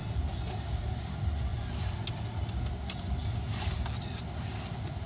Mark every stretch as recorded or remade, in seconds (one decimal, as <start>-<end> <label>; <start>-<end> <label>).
0.0-5.1 recorded